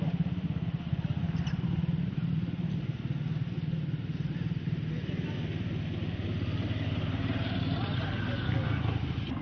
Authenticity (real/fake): real